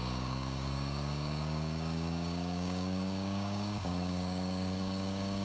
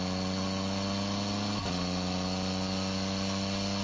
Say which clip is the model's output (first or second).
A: first